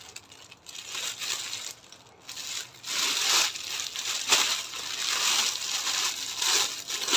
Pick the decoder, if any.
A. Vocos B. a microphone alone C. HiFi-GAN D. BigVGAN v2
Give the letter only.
B